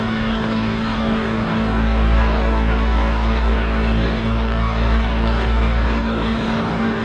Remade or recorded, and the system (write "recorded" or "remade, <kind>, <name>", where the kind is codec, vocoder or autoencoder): remade, codec, DAC